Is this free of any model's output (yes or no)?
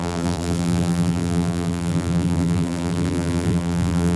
no